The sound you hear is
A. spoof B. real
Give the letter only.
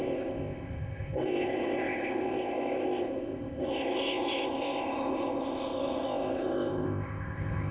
A